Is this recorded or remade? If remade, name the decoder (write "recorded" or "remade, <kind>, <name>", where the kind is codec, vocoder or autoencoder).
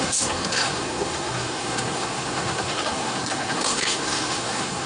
remade, codec, SNAC